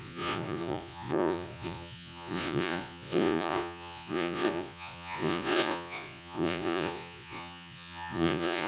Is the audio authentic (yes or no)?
no